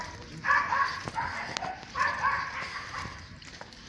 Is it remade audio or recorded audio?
recorded